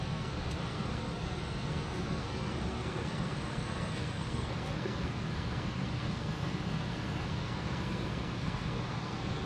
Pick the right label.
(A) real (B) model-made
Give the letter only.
B